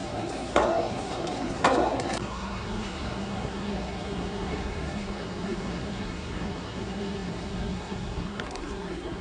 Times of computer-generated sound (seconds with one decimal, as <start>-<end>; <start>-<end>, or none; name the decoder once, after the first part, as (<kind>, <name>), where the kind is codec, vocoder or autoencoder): 0.0-9.2 (codec, SNAC)